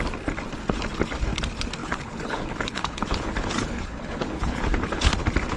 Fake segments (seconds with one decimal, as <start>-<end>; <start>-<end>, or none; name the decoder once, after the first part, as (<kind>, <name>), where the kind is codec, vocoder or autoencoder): 1.8-5.1 (codec, HILCodec)